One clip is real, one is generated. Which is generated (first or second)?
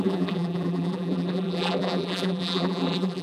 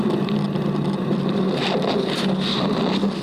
first